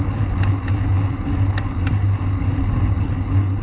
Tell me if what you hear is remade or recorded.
recorded